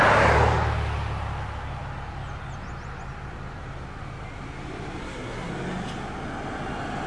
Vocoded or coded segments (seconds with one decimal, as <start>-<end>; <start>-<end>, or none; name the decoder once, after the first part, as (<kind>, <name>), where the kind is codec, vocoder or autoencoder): 5.0-5.5 (codec, SNAC)